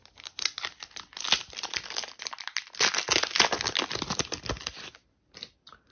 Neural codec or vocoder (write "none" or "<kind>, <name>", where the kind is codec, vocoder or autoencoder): none